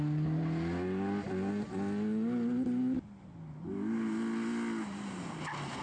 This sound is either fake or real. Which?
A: real